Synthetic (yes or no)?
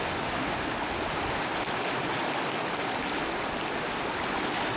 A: no